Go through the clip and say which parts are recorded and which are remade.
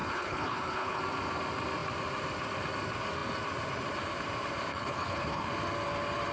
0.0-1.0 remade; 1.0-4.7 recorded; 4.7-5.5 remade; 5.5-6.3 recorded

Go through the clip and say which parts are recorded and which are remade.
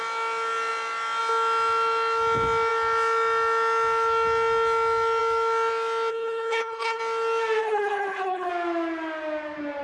0.0-6.1 recorded; 6.1-7.0 remade; 7.0-7.6 recorded; 7.6-8.5 remade; 8.5-9.8 recorded